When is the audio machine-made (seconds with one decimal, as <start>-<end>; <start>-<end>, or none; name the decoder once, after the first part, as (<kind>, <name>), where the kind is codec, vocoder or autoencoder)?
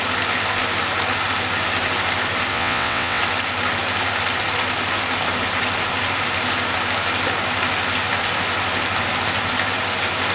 2.5-3.2 (vocoder, WaveNeXt)